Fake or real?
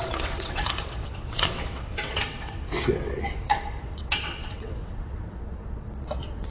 fake